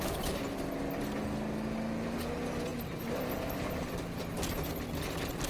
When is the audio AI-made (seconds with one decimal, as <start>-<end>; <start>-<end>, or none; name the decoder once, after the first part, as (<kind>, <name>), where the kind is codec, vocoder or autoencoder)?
none